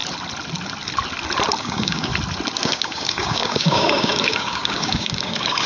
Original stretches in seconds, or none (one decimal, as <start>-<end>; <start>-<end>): 0.0-1.6; 2.1-2.6